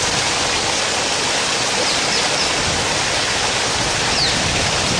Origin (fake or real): real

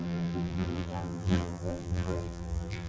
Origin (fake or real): fake